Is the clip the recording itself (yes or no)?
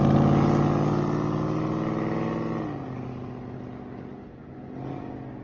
yes